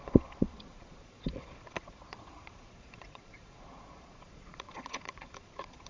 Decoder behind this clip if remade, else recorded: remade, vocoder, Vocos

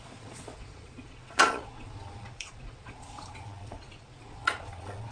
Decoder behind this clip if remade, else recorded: remade, vocoder, Vocos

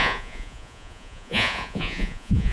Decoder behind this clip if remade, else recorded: remade, vocoder, Vocos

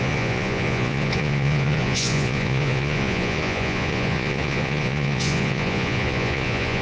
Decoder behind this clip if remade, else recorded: remade, vocoder, Vocos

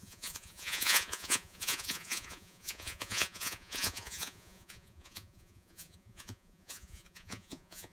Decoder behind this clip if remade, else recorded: remade, vocoder, Vocos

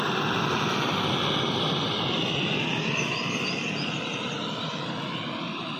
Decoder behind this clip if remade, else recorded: recorded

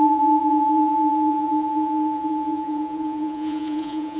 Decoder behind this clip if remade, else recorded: remade, vocoder, Vocos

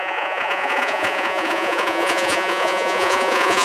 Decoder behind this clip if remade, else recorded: remade, vocoder, Vocos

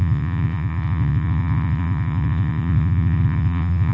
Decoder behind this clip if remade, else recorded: remade, vocoder, Vocos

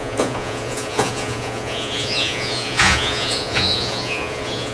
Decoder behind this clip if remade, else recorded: remade, vocoder, Vocos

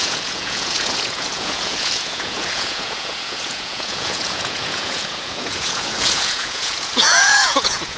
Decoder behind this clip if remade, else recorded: remade, vocoder, Vocos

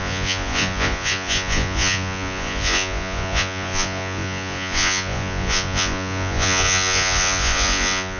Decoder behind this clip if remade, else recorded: remade, vocoder, Vocos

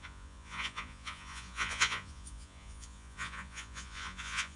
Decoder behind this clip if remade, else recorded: remade, vocoder, Vocos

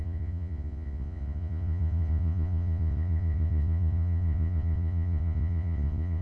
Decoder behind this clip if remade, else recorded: remade, vocoder, Vocos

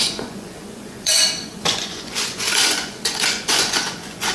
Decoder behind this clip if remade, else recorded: remade, vocoder, Vocos